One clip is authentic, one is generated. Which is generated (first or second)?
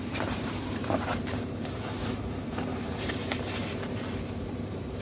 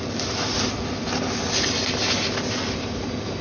first